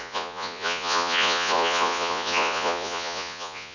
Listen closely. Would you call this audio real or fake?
fake